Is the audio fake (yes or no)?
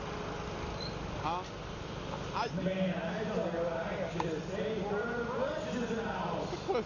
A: no